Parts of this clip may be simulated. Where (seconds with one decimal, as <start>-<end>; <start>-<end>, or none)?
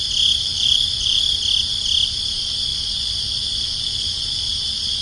0.5-1.2; 2.7-4.4